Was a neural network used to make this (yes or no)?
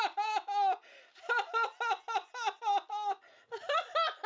no